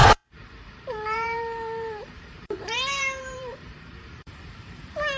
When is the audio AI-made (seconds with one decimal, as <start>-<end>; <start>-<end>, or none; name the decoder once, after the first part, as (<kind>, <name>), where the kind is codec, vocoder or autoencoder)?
0.0-5.2 (vocoder, BigVGAN v2)